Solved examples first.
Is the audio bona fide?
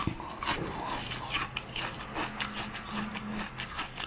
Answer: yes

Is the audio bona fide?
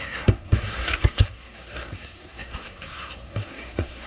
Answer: no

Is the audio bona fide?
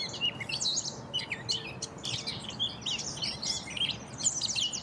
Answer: yes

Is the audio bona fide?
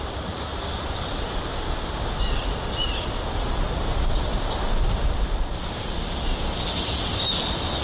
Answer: yes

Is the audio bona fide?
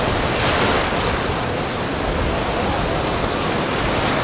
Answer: yes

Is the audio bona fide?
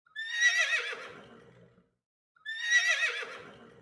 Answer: yes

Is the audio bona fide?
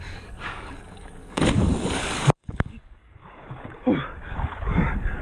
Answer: no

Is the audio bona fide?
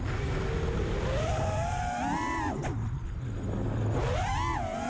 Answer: yes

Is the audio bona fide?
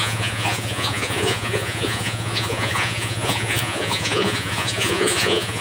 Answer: no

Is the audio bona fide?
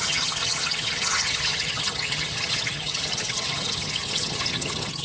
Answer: no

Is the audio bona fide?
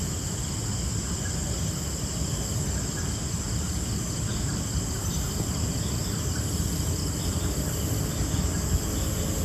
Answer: yes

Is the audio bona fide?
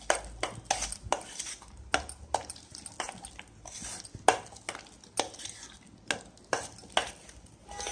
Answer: yes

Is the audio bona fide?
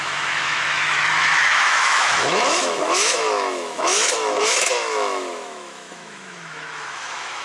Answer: no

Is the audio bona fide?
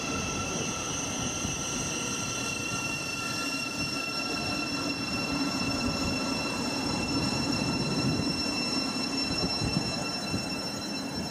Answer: no